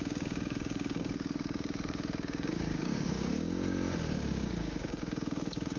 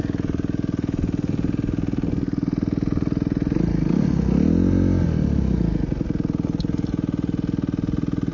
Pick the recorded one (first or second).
second